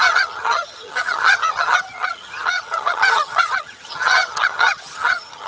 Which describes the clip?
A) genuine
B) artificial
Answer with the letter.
B